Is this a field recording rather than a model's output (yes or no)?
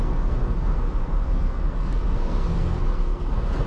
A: no